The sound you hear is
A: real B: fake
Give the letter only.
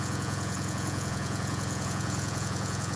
B